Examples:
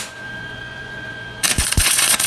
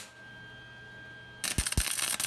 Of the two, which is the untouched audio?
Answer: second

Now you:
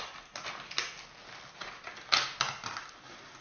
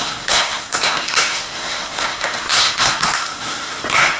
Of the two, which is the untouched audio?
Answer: first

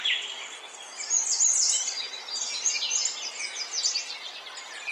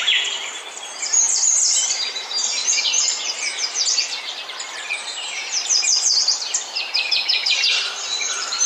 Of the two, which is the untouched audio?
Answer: first